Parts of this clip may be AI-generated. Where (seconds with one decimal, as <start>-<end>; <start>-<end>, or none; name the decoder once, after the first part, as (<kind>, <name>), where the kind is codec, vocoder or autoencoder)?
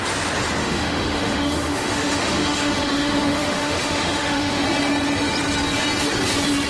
0.6-4.6 (autoencoder, DAC-VAE)